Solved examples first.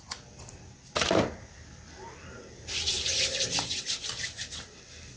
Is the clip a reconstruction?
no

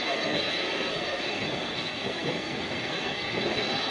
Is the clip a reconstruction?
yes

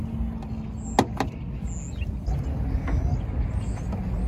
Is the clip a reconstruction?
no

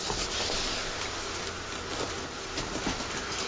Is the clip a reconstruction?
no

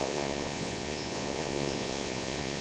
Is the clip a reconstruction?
yes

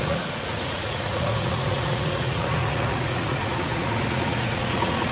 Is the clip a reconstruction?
yes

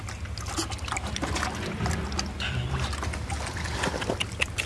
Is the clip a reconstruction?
no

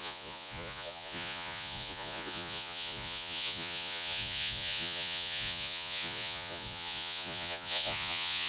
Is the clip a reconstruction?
yes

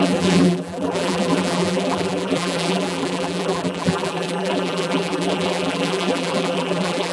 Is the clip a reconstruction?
yes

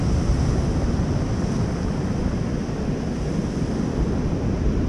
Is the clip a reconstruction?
no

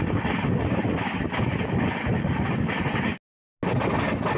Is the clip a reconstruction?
no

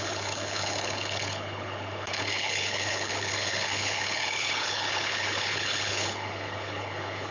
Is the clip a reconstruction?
yes